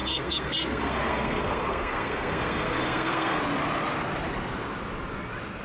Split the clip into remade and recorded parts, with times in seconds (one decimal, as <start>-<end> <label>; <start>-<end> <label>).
0.0-3.4 remade; 3.4-5.6 recorded